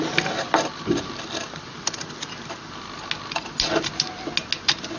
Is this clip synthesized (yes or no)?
no